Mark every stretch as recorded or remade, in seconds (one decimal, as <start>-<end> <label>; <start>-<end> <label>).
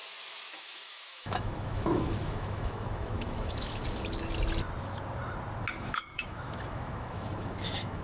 0.0-0.5 recorded; 0.5-3.8 remade; 3.8-5.7 recorded; 5.7-8.0 remade